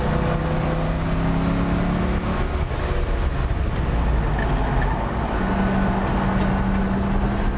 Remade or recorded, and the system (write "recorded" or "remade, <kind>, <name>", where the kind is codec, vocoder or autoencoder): recorded